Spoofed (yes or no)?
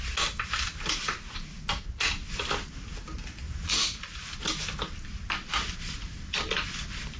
no